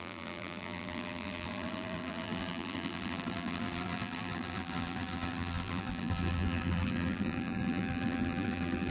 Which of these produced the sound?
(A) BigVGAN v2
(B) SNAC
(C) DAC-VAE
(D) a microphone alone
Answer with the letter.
A